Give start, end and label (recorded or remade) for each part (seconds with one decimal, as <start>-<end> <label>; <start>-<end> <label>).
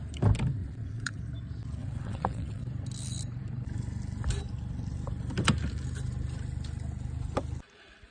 0.0-0.6 recorded; 0.6-1.2 remade; 1.2-1.8 recorded; 1.8-2.6 remade; 2.6-8.1 recorded